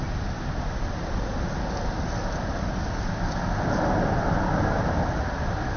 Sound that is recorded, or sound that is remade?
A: recorded